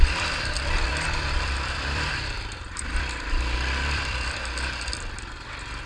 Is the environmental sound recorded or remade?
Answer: remade